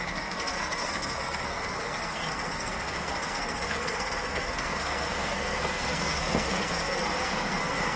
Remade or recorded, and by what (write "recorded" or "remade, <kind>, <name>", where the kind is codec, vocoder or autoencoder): remade, codec, SNAC